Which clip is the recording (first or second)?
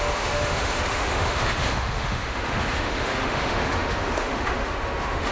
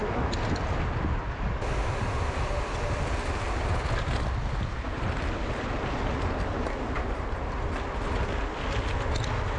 second